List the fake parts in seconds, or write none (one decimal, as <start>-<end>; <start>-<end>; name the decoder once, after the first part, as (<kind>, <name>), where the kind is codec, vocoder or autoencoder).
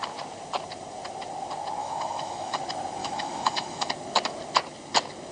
1.8-2.6 (autoencoder, DAC-VAE); 3.0-3.9